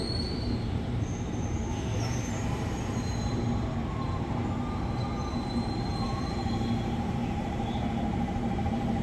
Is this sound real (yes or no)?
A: no